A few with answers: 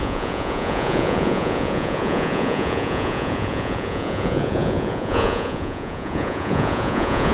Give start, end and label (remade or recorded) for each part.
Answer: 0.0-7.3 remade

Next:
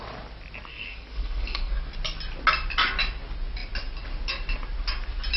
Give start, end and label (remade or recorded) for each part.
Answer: 0.0-0.7 recorded; 0.7-1.7 remade; 1.7-5.4 recorded

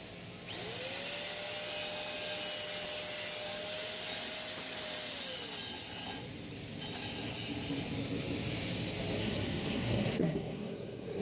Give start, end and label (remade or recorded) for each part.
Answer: 0.0-9.2 recorded; 9.2-11.2 remade

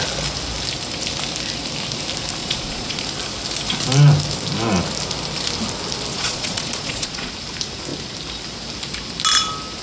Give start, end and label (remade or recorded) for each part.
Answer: 0.0-2.4 recorded; 2.4-3.0 remade; 3.0-6.1 recorded; 6.1-7.3 remade; 7.3-9.8 recorded

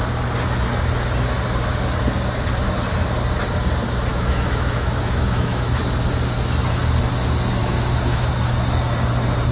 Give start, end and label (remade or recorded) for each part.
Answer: 0.0-4.1 recorded; 4.1-5.8 remade; 5.8-7.6 recorded; 7.6-8.3 remade; 8.3-9.5 recorded

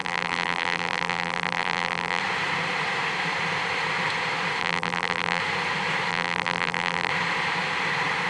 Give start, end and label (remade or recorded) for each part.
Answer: 0.0-2.2 remade; 2.2-4.6 recorded; 4.6-5.4 remade; 5.4-6.1 recorded; 6.1-7.1 remade; 7.1-8.3 recorded

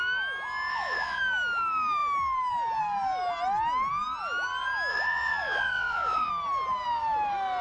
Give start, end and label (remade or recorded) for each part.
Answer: 0.0-0.7 recorded; 0.7-1.2 remade; 1.2-4.9 recorded; 4.9-6.3 remade; 6.3-7.6 recorded